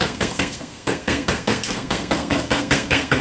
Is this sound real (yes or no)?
no